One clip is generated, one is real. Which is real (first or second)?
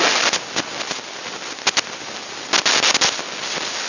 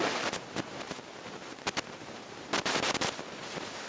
first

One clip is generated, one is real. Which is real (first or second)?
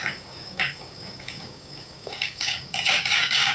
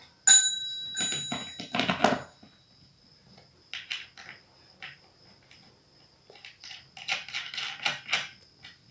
second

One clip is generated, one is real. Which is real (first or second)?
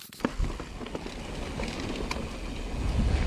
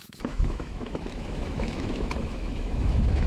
first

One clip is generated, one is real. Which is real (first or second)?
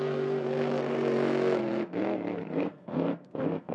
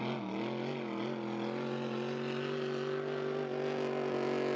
second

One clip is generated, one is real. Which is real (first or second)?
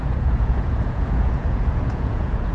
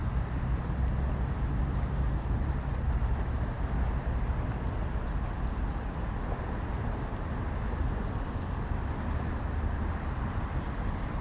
second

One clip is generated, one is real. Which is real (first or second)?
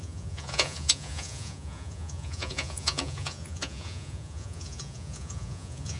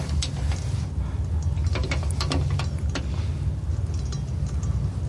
second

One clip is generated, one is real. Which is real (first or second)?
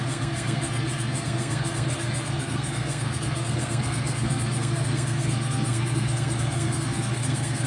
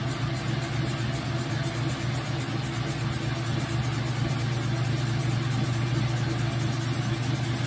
second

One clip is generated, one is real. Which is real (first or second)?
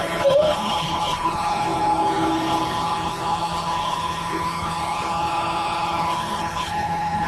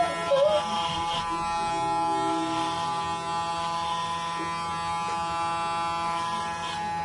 second